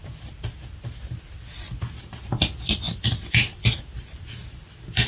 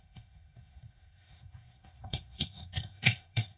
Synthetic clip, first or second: second